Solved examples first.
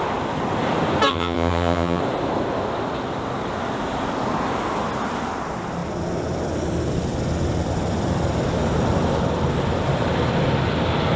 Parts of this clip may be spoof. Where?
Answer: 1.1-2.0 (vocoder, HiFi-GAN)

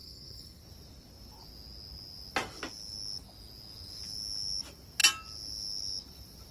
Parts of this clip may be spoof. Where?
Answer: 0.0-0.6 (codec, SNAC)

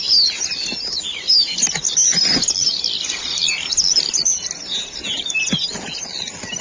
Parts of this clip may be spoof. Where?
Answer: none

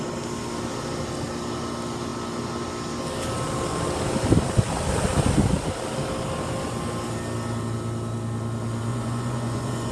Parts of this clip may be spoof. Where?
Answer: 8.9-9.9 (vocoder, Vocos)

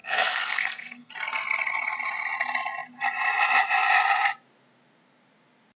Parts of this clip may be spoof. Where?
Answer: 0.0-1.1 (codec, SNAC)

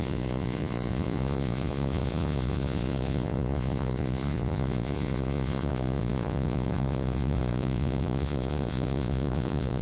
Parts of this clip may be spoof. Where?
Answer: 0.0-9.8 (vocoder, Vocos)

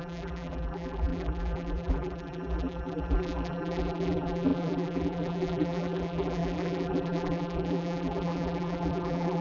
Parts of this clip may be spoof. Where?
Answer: 0.0-9.4 (vocoder, BigVGAN v2)

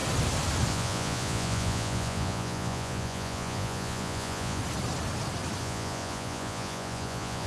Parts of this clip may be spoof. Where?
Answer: 0.7-4.6 (vocoder, Vocos); 5.6-7.5